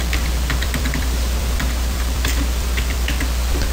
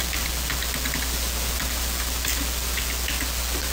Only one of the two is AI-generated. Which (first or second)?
first